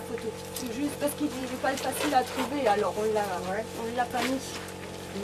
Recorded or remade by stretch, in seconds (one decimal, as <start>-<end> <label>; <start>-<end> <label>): 0.0-5.2 recorded

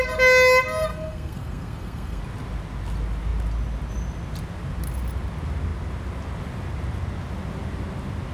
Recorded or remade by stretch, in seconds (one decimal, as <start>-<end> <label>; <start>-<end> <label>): 0.0-0.9 recorded; 0.9-2.2 remade; 2.2-8.3 recorded

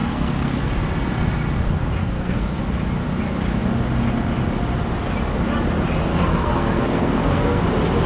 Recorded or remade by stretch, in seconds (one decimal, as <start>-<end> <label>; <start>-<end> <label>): 0.0-0.7 remade; 0.7-2.0 recorded; 2.0-2.6 remade; 2.6-6.1 recorded; 6.1-7.6 remade; 7.6-8.1 recorded

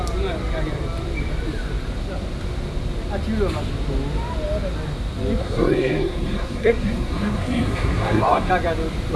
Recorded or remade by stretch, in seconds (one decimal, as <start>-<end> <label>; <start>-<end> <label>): 0.0-5.4 recorded; 5.4-8.5 remade; 8.5-9.2 recorded

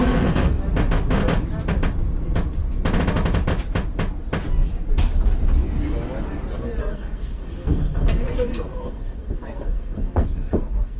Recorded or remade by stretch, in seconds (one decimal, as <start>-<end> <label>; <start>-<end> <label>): 0.0-0.6 remade; 0.6-6.8 recorded; 6.8-11.0 remade